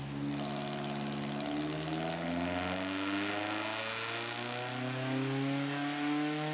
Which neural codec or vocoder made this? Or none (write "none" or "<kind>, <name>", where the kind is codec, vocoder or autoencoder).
none